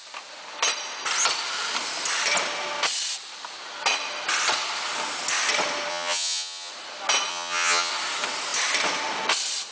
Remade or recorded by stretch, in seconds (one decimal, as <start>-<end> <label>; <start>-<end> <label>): 0.0-5.9 recorded; 5.9-6.7 remade; 6.7-7.3 recorded; 7.3-7.9 remade; 7.9-9.7 recorded

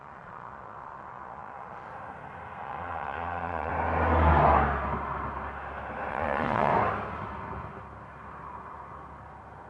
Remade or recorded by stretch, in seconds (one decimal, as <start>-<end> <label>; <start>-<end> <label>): 0.0-1.9 remade; 1.9-2.6 recorded; 2.6-3.7 remade; 3.7-6.1 recorded; 6.1-6.7 remade; 6.7-9.7 recorded

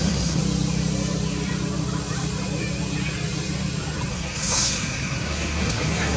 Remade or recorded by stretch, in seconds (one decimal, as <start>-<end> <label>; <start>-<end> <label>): 0.0-0.4 remade; 0.4-4.1 recorded; 4.1-6.2 remade